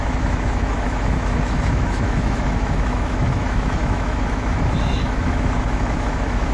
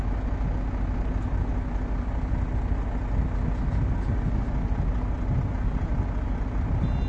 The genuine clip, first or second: second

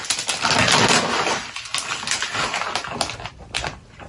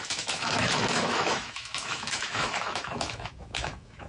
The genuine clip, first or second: first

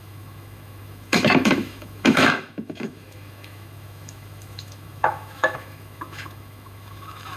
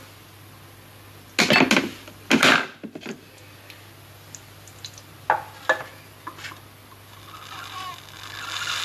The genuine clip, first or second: second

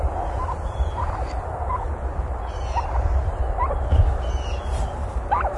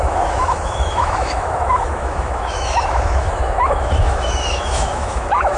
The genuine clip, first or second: first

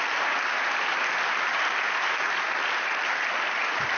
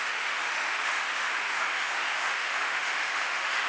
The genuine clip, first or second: first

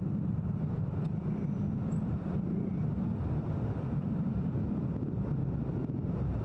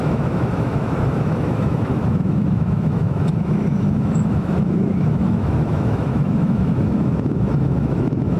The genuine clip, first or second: first